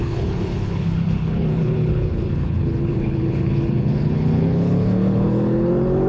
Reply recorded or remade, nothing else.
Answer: remade